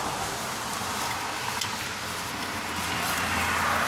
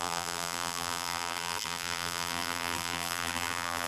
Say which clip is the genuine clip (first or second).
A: first